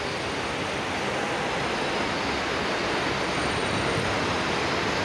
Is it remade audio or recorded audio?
recorded